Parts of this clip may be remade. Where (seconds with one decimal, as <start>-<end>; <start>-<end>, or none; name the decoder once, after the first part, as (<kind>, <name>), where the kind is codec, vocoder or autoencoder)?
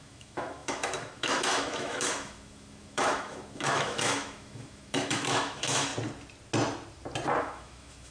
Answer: 0.0-5.9 (autoencoder, DAC-VAE); 7.4-8.1